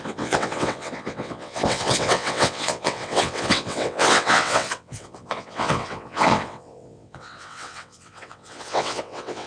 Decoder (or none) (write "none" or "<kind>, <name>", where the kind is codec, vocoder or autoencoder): vocoder, WaveNeXt